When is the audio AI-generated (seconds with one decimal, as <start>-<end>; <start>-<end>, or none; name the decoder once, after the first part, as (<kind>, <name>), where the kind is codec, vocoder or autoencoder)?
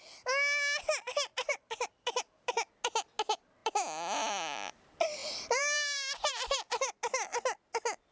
1.5-2.5 (vocoder, BigVGAN v2); 3.6-4.7; 5.2-6.9